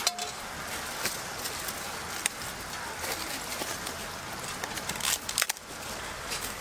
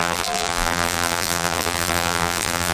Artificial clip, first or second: second